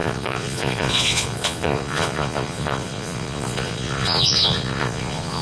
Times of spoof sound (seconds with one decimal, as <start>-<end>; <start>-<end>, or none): 0.0-5.4